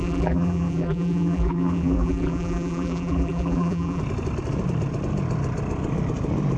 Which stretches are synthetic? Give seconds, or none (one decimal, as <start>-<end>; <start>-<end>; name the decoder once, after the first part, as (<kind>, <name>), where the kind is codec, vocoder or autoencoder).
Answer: 0.0-4.0 (vocoder, BigVGAN v2)